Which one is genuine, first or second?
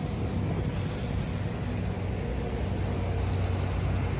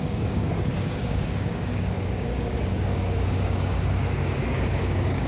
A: first